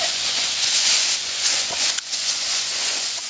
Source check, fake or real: fake